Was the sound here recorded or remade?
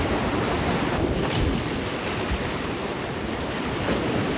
recorded